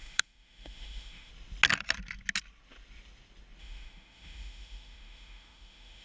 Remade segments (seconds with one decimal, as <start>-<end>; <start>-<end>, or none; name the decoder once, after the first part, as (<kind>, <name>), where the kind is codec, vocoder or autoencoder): 0.0-1.3 (autoencoder, DAC-VAE); 3.6-6.0